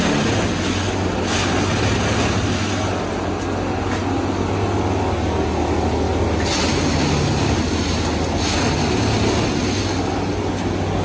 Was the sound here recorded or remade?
recorded